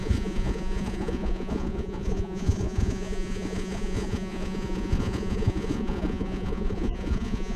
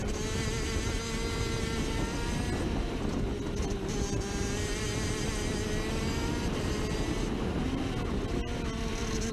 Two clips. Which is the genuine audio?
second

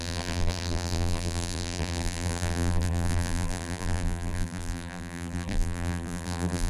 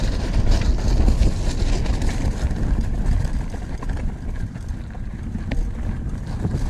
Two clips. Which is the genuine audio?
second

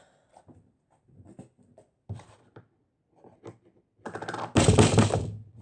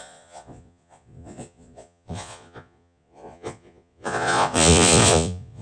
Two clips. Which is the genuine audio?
first